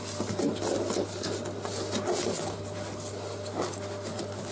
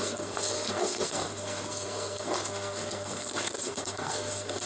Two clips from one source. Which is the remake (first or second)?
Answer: second